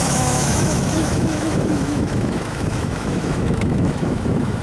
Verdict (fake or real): fake